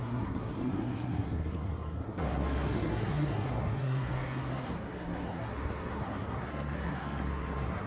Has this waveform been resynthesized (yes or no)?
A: yes